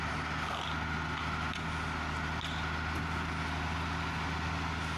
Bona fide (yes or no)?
yes